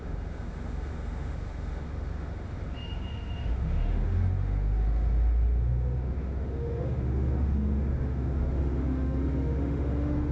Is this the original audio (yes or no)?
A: no